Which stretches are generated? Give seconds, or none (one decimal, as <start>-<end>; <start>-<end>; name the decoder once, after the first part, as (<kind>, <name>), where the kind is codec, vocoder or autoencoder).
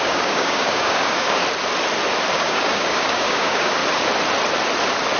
0.0-1.4 (codec, DAC); 2.3-3.8